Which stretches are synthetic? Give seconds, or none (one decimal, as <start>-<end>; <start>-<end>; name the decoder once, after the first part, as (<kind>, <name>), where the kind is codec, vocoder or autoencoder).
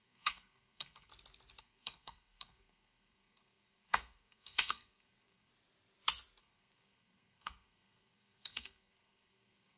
0.0-1.1 (codec, SNAC); 1.6-5.5; 6.4-9.8